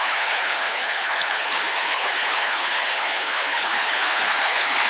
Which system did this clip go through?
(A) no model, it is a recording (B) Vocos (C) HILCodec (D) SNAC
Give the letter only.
C